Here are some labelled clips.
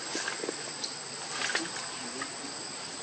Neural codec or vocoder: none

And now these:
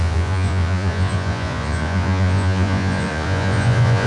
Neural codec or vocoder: vocoder, Vocos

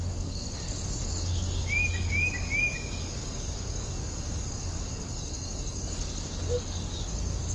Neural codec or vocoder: codec, DAC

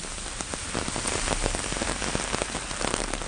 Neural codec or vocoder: none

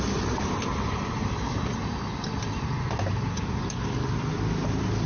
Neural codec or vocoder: none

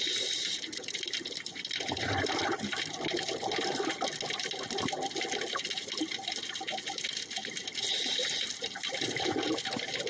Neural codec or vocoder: none